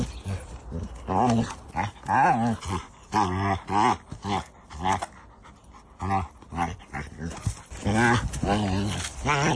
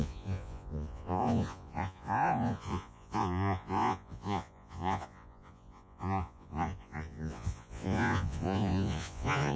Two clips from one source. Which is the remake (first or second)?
second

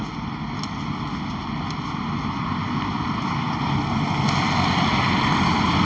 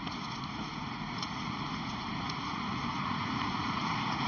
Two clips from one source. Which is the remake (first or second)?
second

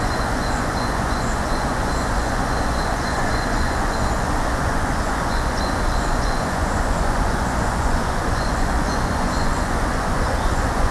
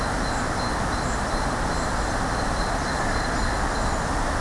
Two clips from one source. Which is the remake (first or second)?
first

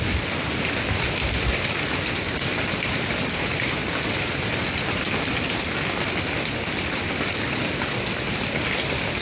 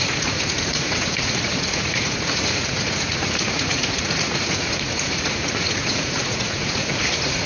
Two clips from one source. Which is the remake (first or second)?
second